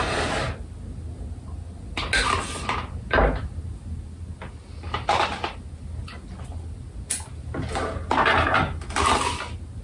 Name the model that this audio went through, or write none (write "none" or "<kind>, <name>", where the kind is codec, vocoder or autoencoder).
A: none